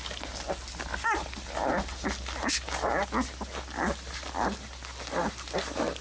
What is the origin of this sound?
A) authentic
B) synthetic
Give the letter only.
A